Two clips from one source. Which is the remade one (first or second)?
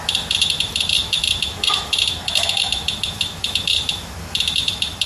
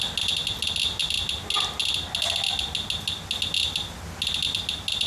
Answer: first